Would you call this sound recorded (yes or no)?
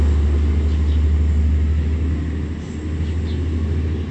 yes